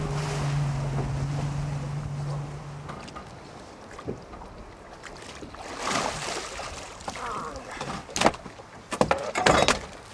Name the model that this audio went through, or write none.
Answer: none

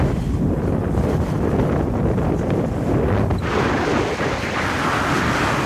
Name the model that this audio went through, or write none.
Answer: none